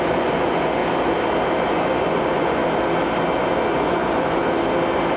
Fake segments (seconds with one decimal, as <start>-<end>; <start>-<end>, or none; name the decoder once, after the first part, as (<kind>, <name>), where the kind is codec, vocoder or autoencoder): 0.0-0.8 (vocoder, Vocos); 1.7-2.6; 3.4-4.4